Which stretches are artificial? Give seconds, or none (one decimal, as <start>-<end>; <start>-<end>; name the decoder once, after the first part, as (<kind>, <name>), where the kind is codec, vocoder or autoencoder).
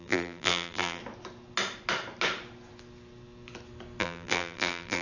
0.0-1.0 (vocoder, BigVGAN v2); 4.0-5.0